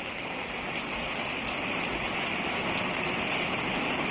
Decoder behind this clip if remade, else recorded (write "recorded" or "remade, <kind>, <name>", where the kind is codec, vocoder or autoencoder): recorded